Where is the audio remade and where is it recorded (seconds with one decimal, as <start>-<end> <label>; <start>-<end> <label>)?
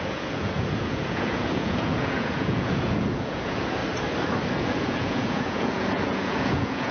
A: 0.0-3.8 remade; 3.8-4.5 recorded; 4.5-6.9 remade